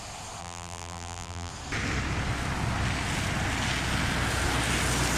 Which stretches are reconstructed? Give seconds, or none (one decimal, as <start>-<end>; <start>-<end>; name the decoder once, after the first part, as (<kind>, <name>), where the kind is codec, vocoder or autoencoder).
0.4-1.5 (vocoder, BigVGAN v2)